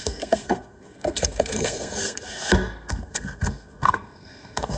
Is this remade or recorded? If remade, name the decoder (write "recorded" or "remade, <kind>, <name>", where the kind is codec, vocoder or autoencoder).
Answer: remade, codec, SNAC